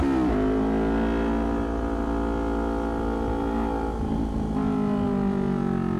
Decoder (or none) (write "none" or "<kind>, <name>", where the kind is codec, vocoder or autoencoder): none